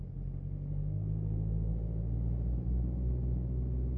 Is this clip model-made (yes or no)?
no